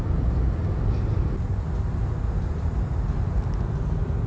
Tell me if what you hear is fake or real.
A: real